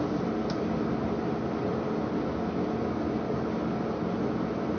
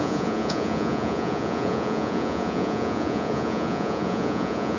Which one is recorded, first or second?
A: first